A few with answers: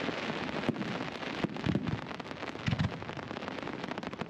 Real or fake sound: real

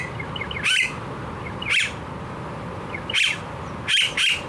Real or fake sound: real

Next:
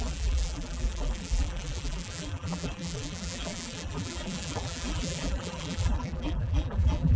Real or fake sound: fake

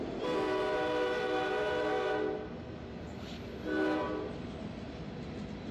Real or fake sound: real